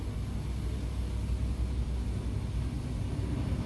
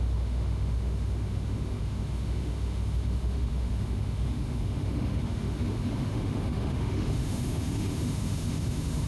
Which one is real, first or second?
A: first